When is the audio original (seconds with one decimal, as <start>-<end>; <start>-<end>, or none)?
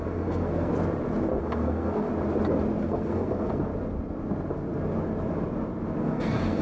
0.7-1.4; 2.1-2.8; 3.7-6.0